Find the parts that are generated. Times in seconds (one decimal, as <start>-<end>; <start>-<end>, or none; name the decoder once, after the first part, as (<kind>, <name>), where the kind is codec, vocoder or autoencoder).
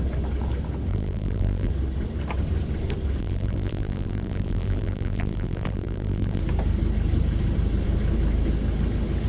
0.9-1.7 (vocoder, BigVGAN v2); 3.2-6.4